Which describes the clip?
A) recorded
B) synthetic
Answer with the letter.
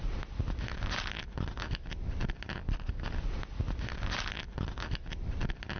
A